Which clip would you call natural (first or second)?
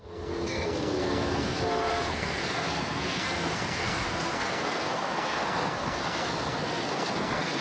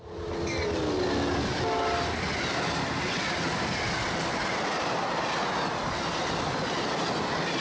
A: second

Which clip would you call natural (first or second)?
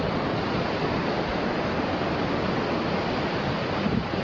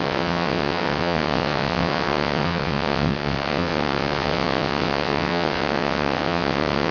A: first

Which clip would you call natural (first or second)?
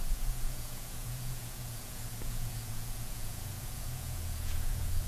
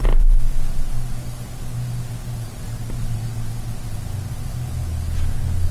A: second